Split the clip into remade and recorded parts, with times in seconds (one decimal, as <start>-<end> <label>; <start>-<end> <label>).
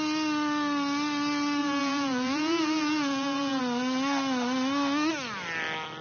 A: 0.0-1.6 recorded; 1.6-3.6 remade; 3.6-6.0 recorded